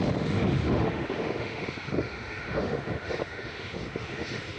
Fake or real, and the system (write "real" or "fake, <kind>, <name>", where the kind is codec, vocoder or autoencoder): fake, autoencoder, DAC-VAE